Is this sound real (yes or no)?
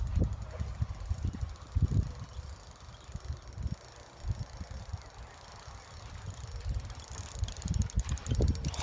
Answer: yes